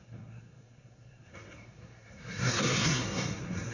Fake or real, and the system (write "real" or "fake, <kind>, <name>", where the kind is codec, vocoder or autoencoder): fake, codec, SNAC